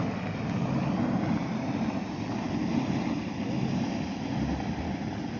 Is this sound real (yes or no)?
yes